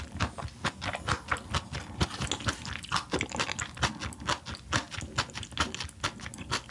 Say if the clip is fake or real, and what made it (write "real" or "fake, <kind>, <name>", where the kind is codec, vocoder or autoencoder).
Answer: real